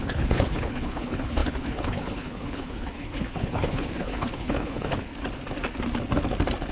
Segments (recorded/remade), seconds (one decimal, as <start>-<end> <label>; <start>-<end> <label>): 0.0-5.1 remade; 5.1-6.7 recorded